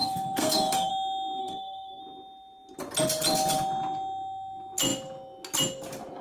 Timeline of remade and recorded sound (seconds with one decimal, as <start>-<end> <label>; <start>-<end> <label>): 0.0-0.9 remade; 0.9-1.4 recorded; 1.4-2.0 remade; 2.0-6.2 recorded